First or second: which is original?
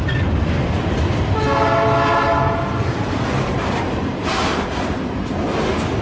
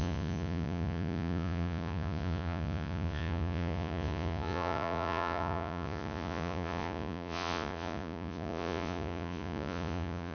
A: first